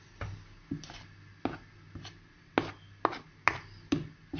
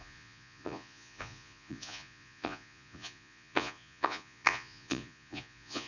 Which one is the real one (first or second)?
first